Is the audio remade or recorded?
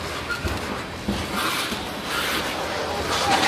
recorded